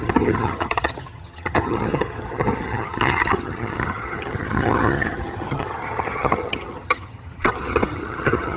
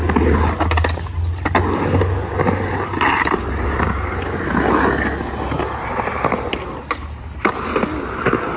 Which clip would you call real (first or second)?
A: second